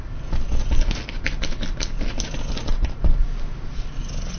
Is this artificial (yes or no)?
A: no